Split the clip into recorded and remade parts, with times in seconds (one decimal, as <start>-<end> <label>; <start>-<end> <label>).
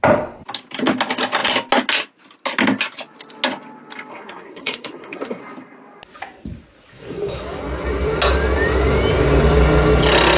0.0-4.1 recorded; 4.1-5.4 remade; 5.4-6.9 recorded; 6.9-7.4 remade; 7.4-10.4 recorded